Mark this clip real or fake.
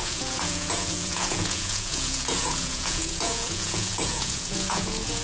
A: fake